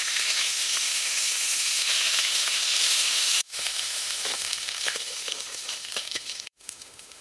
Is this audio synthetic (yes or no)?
yes